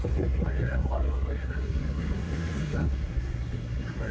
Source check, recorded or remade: remade